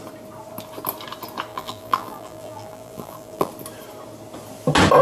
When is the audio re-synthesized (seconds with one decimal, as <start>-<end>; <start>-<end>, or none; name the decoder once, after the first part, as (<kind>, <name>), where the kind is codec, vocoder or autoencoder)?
1.5-3.5 (vocoder, BigVGAN v2)